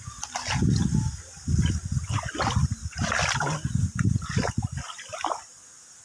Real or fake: real